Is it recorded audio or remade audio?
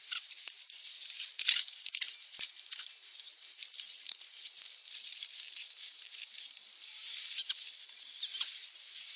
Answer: remade